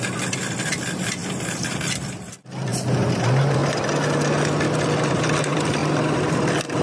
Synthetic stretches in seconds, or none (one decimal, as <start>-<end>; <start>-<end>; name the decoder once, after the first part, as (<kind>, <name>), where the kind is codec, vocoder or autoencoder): 0.0-2.7 (vocoder, BigVGAN v2); 3.2-3.6; 5.1-5.8; 6.3-6.8